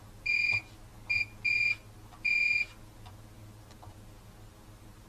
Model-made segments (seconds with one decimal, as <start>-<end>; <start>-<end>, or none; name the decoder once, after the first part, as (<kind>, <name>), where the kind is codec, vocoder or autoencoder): none